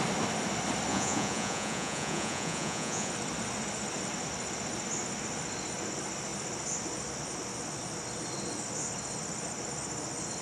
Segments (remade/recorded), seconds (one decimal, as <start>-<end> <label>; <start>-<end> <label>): 0.0-0.9 recorded; 0.9-3.1 remade; 3.1-10.4 recorded